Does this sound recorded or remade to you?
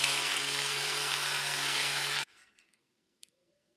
remade